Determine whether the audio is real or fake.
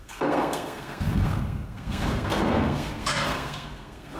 fake